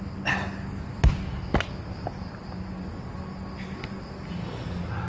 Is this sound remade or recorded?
recorded